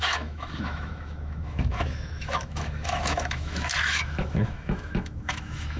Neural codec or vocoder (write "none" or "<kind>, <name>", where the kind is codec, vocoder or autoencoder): autoencoder, DAC-VAE